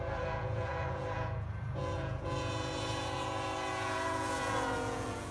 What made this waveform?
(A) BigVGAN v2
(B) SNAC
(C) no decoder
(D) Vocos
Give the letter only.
D